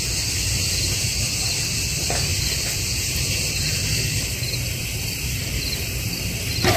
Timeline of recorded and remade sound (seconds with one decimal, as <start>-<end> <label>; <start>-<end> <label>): 0.0-2.3 recorded; 2.3-6.2 remade; 6.2-6.8 recorded